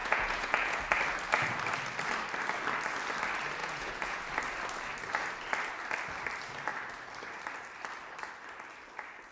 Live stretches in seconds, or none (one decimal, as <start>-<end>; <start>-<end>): 0.8-3.6; 4.2-9.3